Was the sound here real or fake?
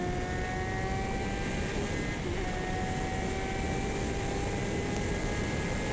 real